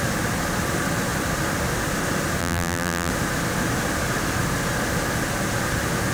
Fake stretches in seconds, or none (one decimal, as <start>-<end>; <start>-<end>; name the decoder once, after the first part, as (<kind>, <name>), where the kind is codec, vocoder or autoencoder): 2.4-3.1 (vocoder, BigVGAN v2)